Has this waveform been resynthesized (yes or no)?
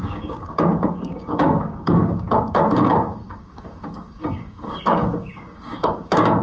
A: yes